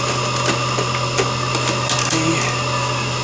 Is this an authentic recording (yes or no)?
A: yes